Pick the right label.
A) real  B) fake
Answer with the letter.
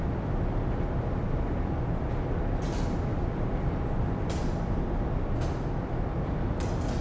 A